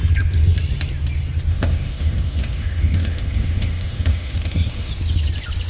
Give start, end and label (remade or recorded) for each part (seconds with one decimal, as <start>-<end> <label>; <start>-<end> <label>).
0.0-1.5 recorded; 1.5-4.9 remade; 4.9-5.7 recorded